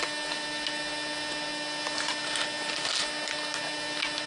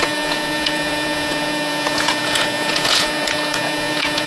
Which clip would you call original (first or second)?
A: first